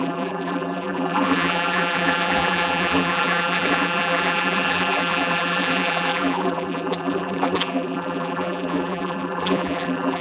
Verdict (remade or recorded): remade